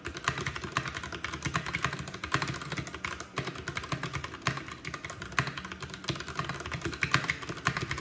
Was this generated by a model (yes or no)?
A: no